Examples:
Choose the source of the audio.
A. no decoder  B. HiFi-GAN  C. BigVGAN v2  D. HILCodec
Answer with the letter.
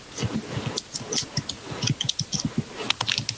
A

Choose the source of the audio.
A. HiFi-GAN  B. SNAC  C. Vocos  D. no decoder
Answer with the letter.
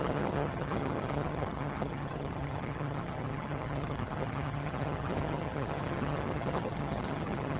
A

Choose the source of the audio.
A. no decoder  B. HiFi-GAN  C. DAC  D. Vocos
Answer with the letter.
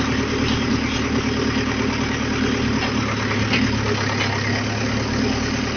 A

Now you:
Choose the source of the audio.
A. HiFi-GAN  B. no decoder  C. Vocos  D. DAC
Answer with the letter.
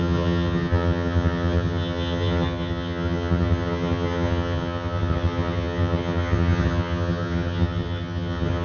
A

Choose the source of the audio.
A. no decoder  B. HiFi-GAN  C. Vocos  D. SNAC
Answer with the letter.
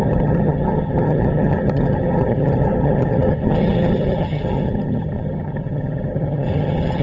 B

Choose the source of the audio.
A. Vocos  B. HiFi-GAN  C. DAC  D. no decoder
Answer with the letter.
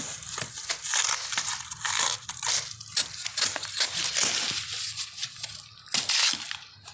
D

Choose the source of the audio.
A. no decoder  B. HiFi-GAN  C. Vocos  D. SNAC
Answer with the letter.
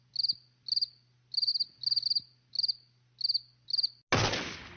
A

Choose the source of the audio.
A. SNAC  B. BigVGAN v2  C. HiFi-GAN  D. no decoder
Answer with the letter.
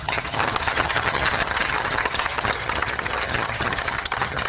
C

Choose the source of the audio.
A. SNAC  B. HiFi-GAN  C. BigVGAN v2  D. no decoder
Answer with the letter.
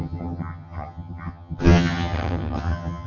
B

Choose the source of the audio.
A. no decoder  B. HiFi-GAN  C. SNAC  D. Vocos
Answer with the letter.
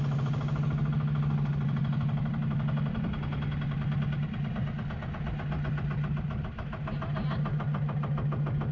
A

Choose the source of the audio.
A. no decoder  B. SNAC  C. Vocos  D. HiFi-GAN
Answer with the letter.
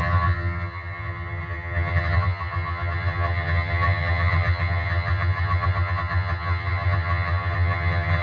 D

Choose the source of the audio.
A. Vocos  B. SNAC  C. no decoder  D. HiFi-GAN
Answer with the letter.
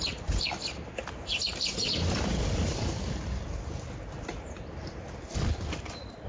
C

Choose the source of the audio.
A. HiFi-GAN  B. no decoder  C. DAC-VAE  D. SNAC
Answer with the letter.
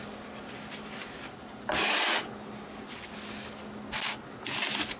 B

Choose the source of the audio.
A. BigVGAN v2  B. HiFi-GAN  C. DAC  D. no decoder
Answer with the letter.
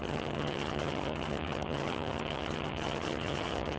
B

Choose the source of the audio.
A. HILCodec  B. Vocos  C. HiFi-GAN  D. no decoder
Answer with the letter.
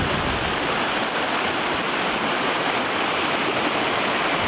D